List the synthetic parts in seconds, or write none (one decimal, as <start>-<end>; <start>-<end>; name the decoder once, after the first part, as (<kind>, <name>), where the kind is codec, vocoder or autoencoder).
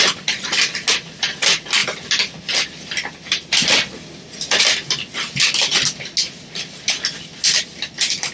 none